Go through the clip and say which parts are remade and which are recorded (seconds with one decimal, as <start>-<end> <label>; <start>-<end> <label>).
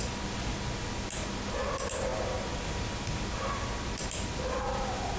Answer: 0.0-5.2 recorded